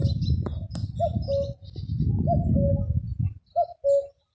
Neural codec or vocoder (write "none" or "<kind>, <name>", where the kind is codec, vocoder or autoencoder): none